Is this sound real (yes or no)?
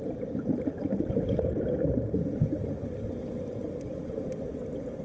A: yes